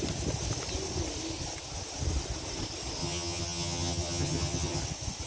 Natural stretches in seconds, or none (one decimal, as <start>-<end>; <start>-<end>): 0.0-3.0; 4.8-5.3